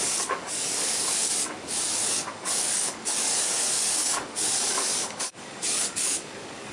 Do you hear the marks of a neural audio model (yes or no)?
yes